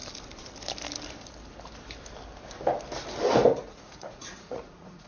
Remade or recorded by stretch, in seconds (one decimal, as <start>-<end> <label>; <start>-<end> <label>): 0.0-3.5 recorded; 3.5-5.1 remade